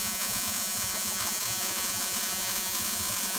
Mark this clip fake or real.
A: fake